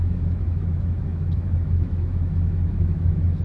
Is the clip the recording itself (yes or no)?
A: no